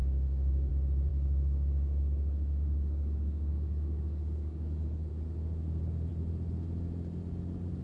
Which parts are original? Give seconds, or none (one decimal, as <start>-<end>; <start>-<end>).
0.7-1.1; 5.1-7.8